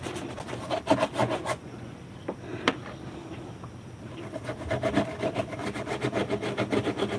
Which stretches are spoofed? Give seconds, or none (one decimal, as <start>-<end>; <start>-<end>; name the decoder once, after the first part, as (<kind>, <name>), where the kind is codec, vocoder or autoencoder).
1.2-2.0 (vocoder, Vocos)